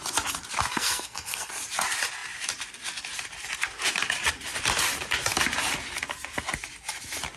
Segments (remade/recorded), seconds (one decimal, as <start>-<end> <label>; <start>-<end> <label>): 0.0-0.7 recorded; 0.7-1.5 remade; 1.5-7.4 recorded